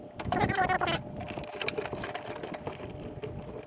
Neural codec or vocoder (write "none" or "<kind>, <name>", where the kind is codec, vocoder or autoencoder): none